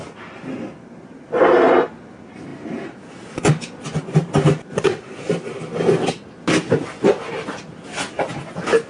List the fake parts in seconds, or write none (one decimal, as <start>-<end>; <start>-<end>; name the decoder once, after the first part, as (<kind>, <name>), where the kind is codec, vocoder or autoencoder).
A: none